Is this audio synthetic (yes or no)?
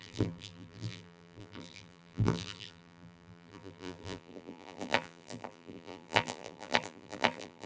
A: yes